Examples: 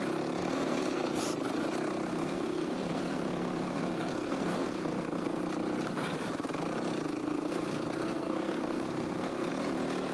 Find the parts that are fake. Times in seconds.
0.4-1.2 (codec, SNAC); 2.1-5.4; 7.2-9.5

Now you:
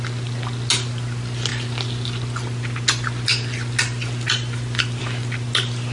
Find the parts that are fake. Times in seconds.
none

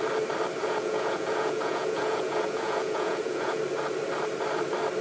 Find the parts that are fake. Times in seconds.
0.6-3.6 (vocoder, Vocos)

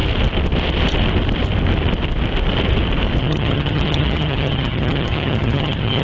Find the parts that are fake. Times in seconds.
3.2-6.0 (vocoder, HiFi-GAN)

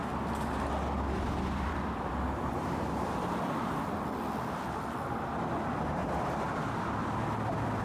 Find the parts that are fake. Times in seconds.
0.0-3.4 (vocoder, BigVGAN v2)